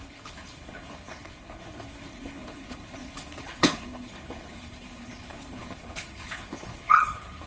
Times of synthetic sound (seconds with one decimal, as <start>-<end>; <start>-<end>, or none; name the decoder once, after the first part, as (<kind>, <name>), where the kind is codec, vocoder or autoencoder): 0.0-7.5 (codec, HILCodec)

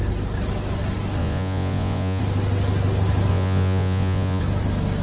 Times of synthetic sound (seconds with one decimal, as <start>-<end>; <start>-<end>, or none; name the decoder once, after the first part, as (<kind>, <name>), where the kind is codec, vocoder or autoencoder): 1.2-2.2 (vocoder, Vocos); 3.3-4.4

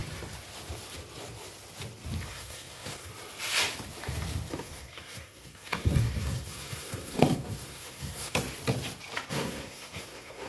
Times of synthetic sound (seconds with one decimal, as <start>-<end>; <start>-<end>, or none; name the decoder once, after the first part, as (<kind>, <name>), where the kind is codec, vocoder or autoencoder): 2.3-3.1 (codec, SNAC); 4.5-8.4; 9.3-10.5